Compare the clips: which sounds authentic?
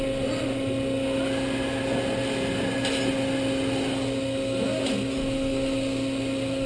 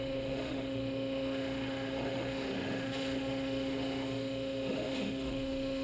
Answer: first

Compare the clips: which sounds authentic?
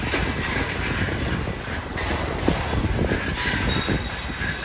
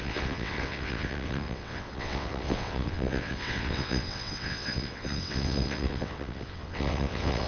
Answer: first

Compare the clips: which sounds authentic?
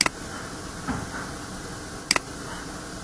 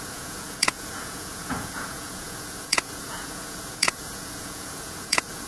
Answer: first